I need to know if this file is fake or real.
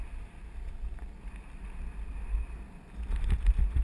real